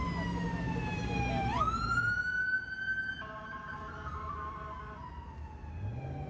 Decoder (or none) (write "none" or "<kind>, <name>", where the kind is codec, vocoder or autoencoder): none